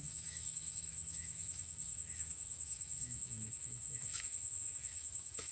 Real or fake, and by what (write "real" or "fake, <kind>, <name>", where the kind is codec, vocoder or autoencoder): fake, autoencoder, DAC-VAE